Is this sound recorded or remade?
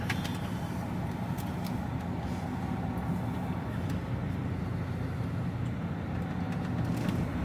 recorded